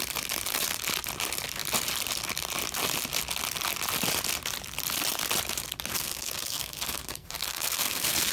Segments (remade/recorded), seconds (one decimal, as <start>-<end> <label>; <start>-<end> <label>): 0.0-5.9 recorded; 5.9-8.3 remade